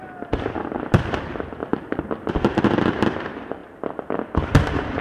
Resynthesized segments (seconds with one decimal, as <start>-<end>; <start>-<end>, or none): 0.0-1.6; 2.3-5.0